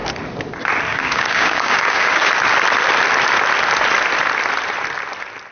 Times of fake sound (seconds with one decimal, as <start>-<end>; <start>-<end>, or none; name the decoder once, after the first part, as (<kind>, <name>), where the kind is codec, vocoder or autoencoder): 0.9-2.3 (codec, DAC)